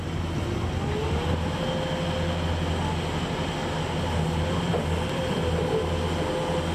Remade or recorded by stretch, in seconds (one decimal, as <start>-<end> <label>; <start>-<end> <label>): 0.0-6.7 recorded